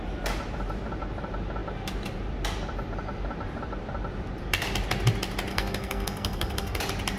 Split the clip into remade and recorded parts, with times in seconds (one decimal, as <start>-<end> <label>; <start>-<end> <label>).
0.0-5.5 recorded; 5.5-6.8 remade; 6.8-7.2 recorded